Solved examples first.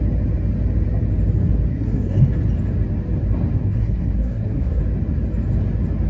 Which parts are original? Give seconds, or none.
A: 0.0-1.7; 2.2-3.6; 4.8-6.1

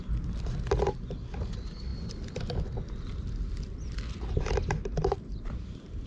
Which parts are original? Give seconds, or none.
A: 0.0-5.3

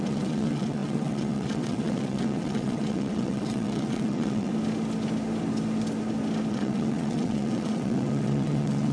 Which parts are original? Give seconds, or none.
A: 4.5-6.5

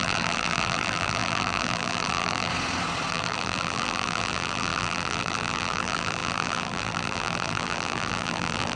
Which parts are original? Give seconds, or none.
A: 2.5-3.1

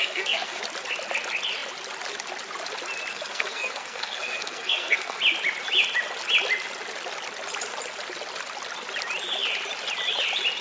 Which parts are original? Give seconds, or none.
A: 0.6-3.1; 5.2-10.6